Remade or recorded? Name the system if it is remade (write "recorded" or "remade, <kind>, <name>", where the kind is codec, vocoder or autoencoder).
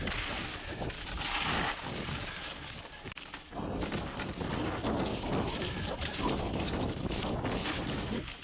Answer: recorded